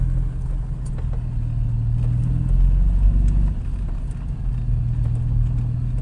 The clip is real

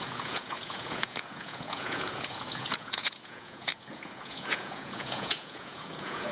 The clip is fake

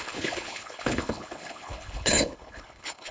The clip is fake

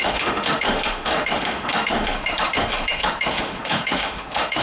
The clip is fake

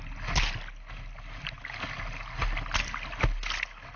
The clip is real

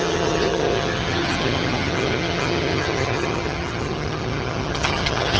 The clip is fake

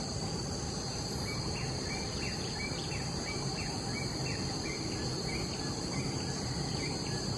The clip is fake